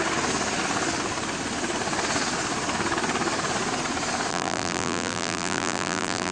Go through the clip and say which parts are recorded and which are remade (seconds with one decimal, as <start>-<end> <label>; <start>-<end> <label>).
0.0-4.3 recorded; 4.3-6.3 remade